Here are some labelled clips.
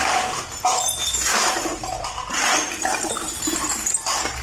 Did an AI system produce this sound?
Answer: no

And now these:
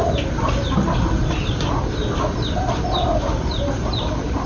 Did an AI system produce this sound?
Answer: no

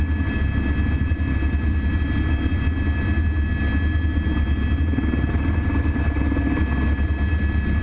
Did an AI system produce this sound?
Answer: no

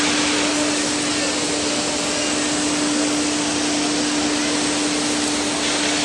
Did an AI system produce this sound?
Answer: no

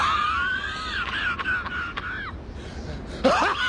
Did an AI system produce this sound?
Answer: no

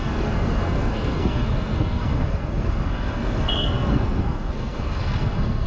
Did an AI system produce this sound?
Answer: yes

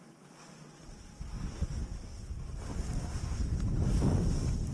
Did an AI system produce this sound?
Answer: no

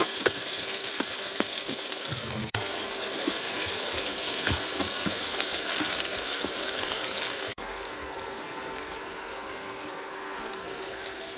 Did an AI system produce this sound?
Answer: yes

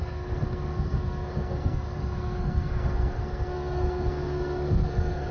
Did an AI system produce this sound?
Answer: yes